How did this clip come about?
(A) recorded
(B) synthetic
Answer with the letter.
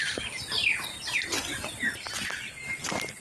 A